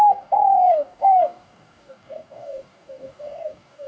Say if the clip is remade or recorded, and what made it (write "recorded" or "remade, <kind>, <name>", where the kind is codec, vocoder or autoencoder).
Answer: remade, codec, DAC